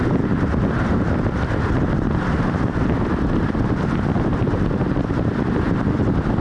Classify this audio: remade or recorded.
remade